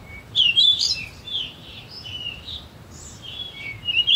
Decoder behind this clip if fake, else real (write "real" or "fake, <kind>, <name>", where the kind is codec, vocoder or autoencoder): fake, vocoder, BigVGAN v2